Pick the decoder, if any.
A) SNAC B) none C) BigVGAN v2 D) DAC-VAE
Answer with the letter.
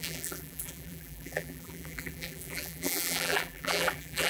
C